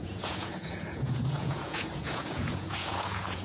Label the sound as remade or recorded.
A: remade